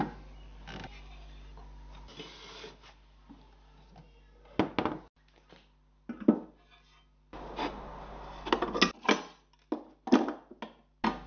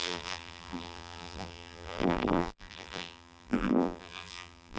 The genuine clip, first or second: first